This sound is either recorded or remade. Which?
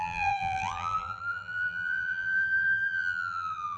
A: remade